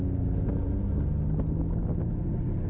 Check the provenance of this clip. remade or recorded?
recorded